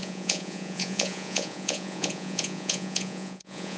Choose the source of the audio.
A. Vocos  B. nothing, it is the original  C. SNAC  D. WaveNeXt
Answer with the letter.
A